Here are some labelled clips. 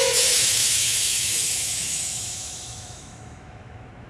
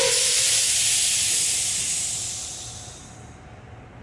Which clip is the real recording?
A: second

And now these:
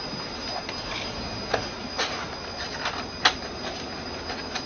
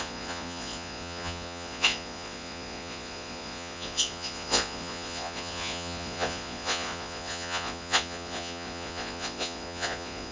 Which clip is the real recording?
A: first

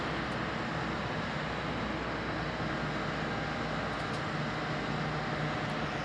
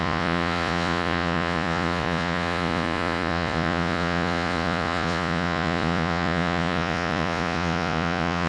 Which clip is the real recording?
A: first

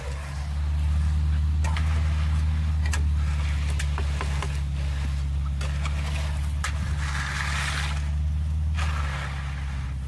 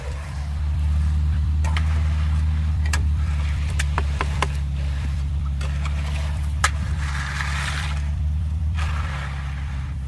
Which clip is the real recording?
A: first